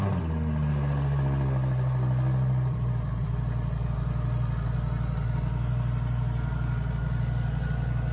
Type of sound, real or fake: real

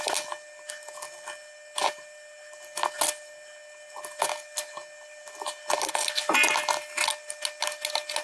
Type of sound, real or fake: real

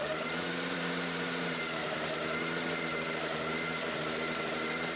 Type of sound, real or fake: fake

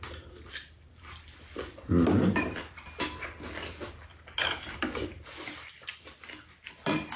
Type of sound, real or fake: fake